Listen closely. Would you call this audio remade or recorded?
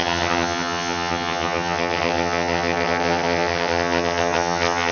remade